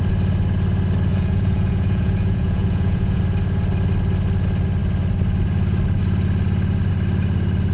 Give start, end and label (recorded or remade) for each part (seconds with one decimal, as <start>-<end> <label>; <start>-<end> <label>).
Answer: 0.0-1.1 recorded; 1.1-3.2 remade; 3.2-7.7 recorded

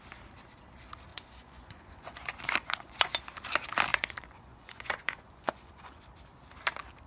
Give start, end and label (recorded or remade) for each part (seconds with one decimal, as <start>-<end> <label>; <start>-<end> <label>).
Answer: 0.0-1.1 recorded; 1.1-3.2 remade; 3.2-3.9 recorded; 3.9-6.1 remade; 6.1-7.1 recorded